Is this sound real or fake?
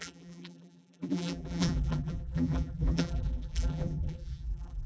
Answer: fake